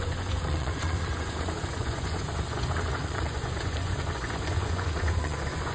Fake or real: fake